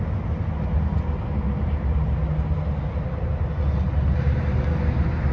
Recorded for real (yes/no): yes